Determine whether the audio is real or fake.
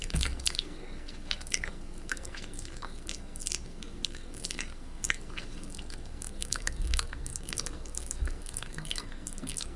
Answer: fake